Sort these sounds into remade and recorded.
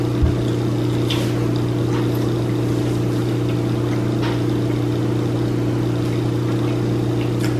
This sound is recorded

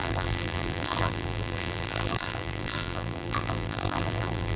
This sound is remade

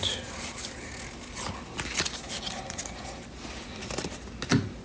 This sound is recorded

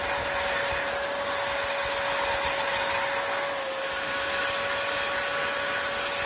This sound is recorded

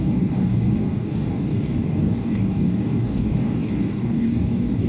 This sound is remade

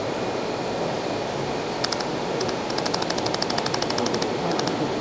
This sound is recorded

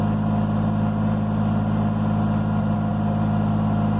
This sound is recorded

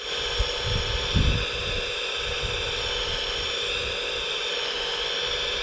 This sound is recorded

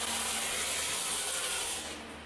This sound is recorded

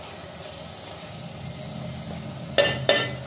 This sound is recorded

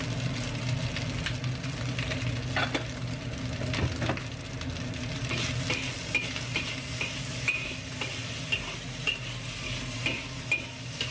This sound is recorded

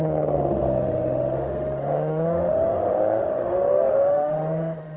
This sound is remade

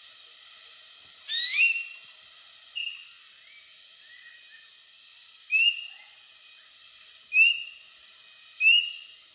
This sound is recorded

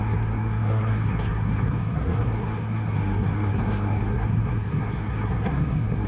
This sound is remade